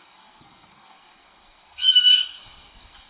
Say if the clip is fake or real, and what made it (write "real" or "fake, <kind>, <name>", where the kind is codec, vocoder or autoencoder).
fake, codec, SNAC